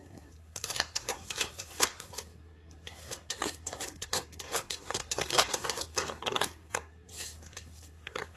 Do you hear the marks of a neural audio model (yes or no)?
yes